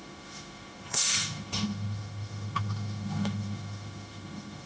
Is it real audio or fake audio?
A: fake